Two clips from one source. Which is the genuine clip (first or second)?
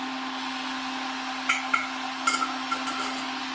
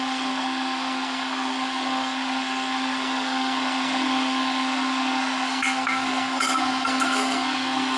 first